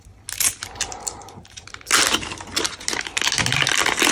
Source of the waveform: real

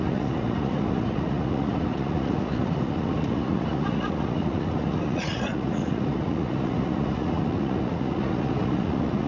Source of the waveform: fake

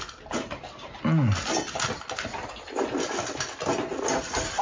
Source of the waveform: real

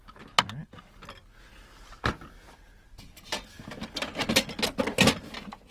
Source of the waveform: real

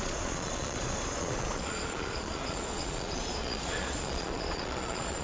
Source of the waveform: fake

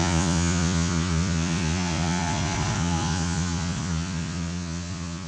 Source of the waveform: fake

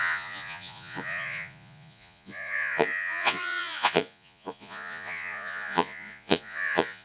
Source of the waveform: fake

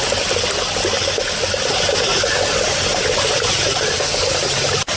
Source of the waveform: real